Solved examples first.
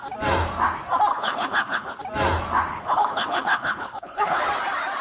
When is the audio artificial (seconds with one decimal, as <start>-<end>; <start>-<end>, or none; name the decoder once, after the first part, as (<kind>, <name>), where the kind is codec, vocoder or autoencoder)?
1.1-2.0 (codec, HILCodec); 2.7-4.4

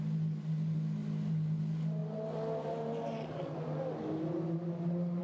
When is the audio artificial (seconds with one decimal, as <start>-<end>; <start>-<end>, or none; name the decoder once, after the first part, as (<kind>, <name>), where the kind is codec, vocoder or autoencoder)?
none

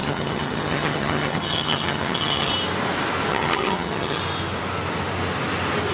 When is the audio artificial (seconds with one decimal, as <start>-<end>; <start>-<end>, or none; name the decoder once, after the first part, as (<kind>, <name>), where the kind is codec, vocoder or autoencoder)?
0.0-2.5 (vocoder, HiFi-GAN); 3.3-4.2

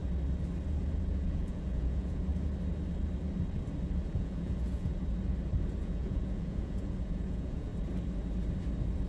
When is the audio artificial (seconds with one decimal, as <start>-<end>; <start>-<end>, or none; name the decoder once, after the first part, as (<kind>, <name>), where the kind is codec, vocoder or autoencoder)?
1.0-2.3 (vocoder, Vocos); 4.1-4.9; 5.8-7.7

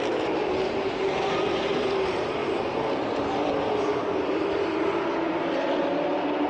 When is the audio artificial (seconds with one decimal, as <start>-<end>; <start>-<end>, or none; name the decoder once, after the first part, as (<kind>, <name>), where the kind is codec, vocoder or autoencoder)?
0.0-6.5 (vocoder, BigVGAN v2)